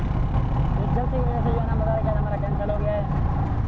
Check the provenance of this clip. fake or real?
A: real